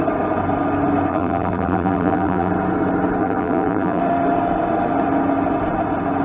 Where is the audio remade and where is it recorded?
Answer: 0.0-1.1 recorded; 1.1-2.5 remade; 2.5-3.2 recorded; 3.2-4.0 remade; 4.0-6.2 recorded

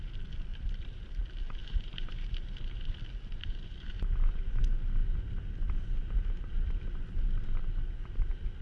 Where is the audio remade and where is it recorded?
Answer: 0.0-0.5 recorded; 0.5-1.1 remade; 1.1-1.6 recorded; 1.6-2.8 remade; 2.8-3.4 recorded; 3.4-4.6 remade; 4.6-8.6 recorded

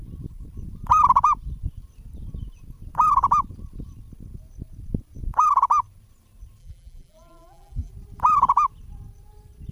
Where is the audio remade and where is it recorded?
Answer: 0.0-6.6 recorded; 6.6-7.9 remade; 7.9-9.7 recorded

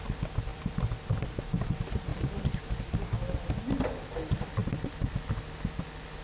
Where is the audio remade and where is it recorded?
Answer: 0.0-0.5 recorded; 0.5-1.4 remade; 1.4-2.1 recorded; 2.1-2.6 remade; 2.6-6.2 recorded